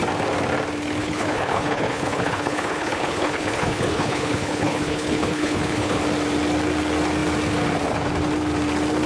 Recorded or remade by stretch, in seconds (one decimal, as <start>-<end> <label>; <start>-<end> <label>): 0.0-1.0 recorded; 1.0-6.0 remade; 6.0-9.1 recorded